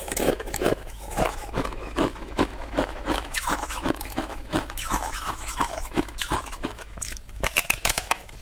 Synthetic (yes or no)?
yes